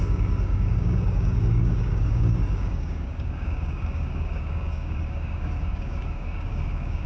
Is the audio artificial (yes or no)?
yes